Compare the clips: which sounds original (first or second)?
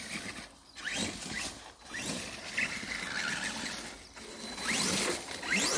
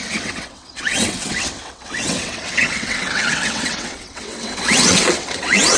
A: first